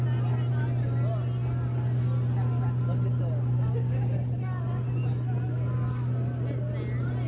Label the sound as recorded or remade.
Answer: recorded